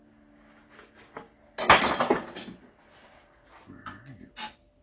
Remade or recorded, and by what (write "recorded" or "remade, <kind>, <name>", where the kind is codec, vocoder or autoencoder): recorded